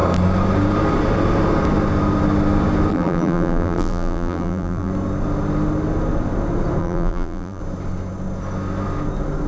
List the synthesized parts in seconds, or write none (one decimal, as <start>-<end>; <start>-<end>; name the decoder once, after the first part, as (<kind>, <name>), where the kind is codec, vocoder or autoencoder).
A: 2.9-4.9 (vocoder, BigVGAN v2); 6.8-7.6